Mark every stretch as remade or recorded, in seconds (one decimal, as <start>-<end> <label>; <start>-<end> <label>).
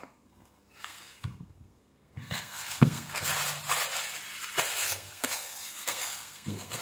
0.0-3.3 remade; 3.3-4.8 recorded; 4.8-6.8 remade